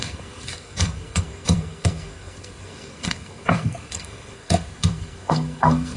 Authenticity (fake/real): fake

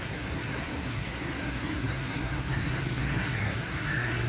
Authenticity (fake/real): fake